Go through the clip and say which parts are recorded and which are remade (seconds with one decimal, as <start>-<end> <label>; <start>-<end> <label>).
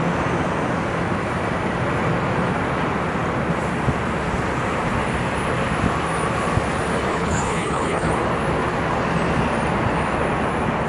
0.0-7.1 recorded; 7.1-8.1 remade; 8.1-10.9 recorded